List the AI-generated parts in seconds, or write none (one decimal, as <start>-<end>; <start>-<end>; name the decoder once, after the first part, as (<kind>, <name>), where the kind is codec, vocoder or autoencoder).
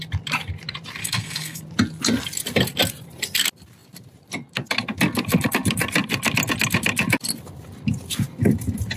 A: 1.0-1.6 (codec, SNAC)